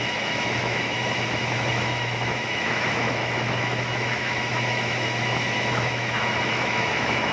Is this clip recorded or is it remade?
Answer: remade